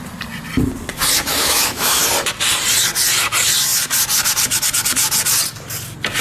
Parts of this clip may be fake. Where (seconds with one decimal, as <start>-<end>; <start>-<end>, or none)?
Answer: 1.3-2.0